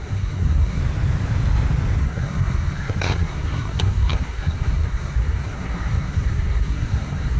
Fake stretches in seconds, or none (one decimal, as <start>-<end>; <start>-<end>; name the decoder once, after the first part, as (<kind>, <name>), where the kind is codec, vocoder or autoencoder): 0.0-0.8 (codec, SNAC); 2.0-7.4